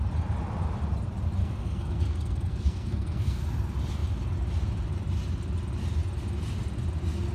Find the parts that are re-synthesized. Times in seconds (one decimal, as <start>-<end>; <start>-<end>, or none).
1.4-3.4